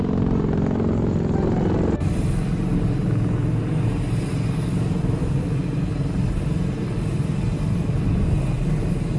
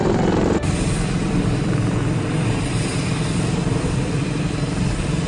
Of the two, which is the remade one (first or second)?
second